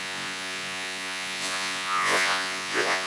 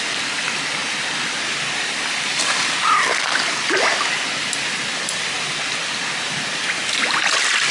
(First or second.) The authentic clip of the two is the second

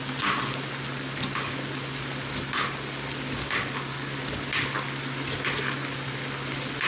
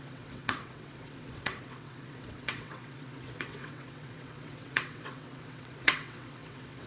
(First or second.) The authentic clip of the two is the first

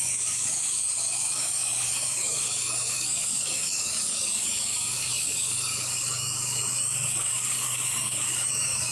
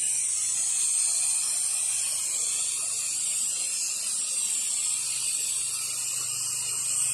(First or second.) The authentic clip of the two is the second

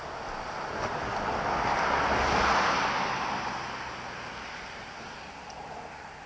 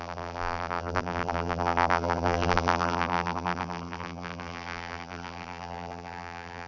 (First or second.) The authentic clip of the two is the first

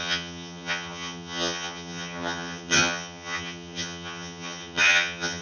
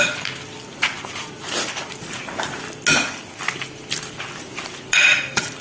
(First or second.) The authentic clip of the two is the second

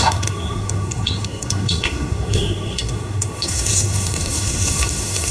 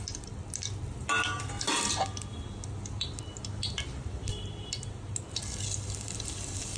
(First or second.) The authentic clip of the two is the second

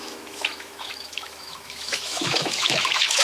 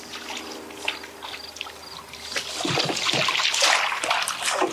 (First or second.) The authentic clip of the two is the second